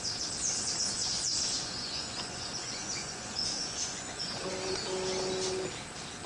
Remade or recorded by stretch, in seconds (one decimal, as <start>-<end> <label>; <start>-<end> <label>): 0.0-1.0 recorded; 1.0-4.5 remade; 4.5-6.3 recorded